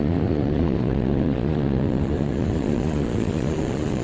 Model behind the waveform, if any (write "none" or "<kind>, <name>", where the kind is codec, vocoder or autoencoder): vocoder, Vocos